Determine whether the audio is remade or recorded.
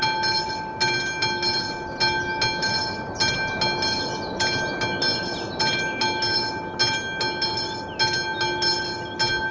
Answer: recorded